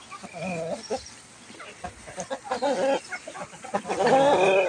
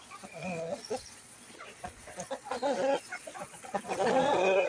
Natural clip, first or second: first